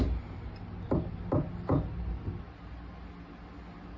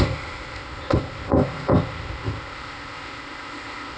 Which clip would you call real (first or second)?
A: first